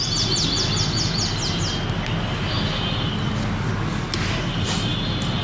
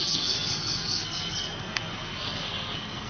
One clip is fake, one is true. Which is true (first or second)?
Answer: first